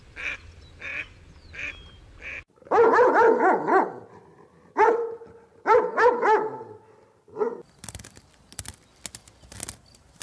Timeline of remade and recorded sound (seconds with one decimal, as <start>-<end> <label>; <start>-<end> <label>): 0.0-10.2 recorded